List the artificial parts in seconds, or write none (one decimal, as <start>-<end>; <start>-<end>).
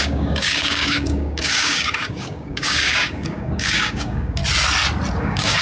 0.0-4.4; 5.1-5.6